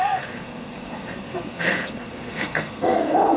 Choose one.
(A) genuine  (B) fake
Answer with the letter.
B